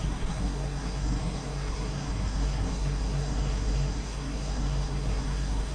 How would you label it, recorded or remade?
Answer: remade